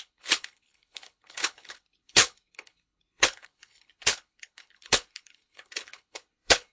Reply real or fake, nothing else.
fake